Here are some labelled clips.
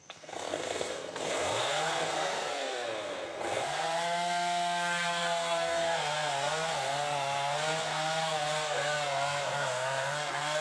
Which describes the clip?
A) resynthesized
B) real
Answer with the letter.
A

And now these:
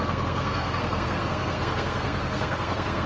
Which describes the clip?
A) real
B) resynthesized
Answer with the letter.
B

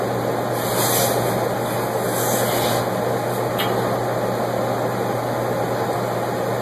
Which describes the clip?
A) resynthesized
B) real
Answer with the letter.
B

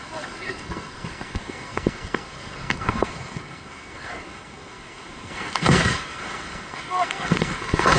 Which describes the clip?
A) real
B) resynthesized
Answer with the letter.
B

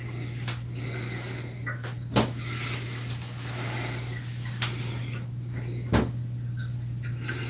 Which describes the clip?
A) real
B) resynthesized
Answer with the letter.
A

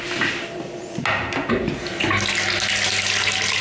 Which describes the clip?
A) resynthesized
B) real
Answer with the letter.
B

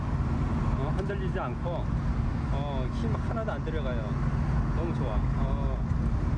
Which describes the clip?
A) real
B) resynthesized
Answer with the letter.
A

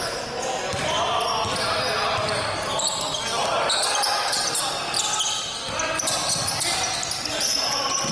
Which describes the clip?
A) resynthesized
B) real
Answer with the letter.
B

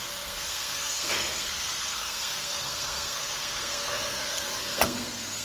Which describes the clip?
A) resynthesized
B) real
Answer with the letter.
A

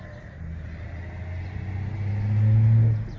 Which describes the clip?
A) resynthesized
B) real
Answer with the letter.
B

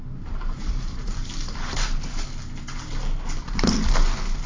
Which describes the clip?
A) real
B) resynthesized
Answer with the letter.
A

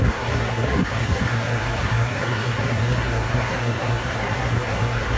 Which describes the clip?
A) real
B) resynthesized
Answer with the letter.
B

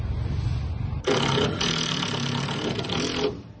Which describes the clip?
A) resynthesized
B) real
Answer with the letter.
B